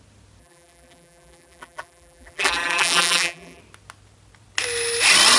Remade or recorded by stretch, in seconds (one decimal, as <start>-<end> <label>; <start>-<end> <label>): 0.0-0.4 recorded; 0.4-3.6 remade; 3.6-5.4 recorded